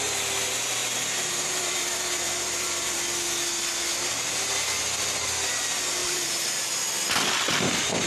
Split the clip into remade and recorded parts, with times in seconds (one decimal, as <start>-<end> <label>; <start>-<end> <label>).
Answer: 0.0-0.8 recorded; 0.8-3.0 remade; 3.0-6.0 recorded; 6.0-6.6 remade; 6.6-8.1 recorded